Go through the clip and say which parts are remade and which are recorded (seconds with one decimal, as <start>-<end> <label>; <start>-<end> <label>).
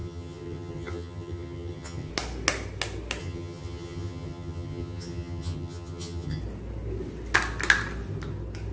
0.0-2.1 remade; 2.1-3.2 recorded; 3.2-6.4 remade; 6.4-8.7 recorded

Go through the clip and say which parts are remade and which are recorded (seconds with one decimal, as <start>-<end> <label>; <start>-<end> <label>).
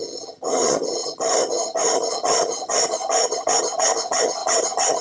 0.0-5.0 remade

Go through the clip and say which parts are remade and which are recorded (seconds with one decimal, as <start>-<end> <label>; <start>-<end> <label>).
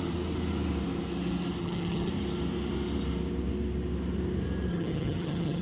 0.0-1.6 recorded; 1.6-2.1 remade; 2.1-4.7 recorded; 4.7-5.6 remade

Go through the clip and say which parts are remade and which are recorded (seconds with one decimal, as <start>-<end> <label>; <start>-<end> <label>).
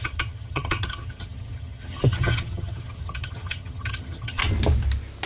0.0-4.4 remade; 4.4-5.3 recorded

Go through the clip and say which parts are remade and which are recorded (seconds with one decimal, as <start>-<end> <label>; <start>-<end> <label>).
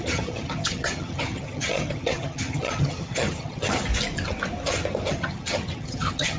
0.0-3.9 remade; 3.9-5.1 recorded; 5.1-6.4 remade